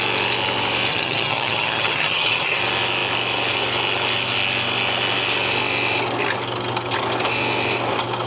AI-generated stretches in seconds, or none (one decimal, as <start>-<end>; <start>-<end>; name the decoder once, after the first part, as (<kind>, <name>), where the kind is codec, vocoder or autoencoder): 0.9-2.6 (vocoder, HiFi-GAN)